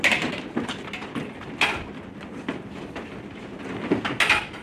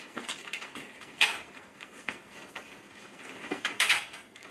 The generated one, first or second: second